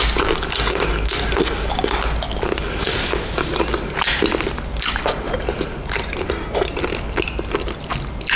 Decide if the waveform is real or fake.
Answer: real